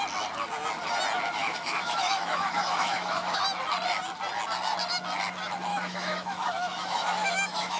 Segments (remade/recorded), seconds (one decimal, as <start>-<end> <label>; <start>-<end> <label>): 0.0-1.4 recorded; 1.4-3.4 remade; 3.4-5.7 recorded; 5.7-7.8 remade